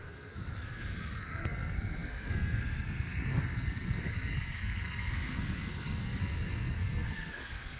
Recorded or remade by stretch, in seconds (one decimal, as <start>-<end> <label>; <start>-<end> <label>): 0.0-7.8 remade